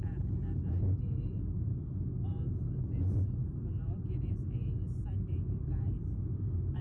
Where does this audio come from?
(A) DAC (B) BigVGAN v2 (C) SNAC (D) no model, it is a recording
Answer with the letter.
D